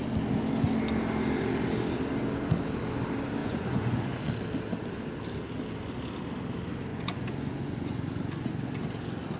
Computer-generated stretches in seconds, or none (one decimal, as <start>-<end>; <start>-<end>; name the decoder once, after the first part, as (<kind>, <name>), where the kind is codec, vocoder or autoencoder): 3.4-4.3 (vocoder, Vocos); 6.9-8.6